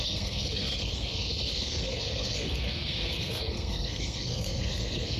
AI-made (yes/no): yes